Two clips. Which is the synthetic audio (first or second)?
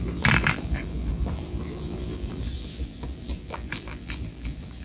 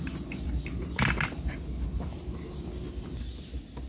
first